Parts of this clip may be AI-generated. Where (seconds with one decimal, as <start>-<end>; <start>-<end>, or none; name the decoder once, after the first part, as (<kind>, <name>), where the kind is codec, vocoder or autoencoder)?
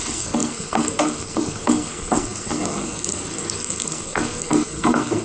0.0-5.2 (codec, SNAC)